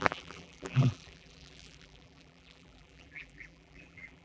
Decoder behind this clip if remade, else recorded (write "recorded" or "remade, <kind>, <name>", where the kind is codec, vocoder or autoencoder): remade, vocoder, BigVGAN v2